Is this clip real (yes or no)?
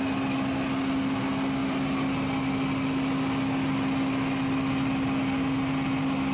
yes